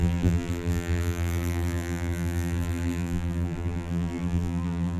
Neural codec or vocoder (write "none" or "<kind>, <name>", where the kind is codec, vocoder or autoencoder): vocoder, BigVGAN v2